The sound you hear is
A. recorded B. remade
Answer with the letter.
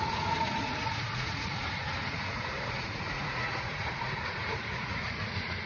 B